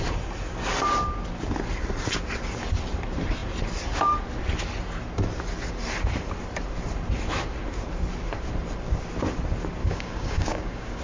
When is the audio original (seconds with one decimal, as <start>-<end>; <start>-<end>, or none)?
0.0-9.8